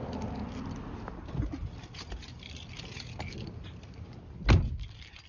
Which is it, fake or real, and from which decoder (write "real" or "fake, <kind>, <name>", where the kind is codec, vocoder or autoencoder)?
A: real